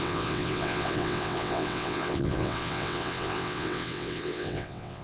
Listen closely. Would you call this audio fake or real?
fake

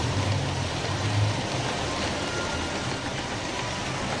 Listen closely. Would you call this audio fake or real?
real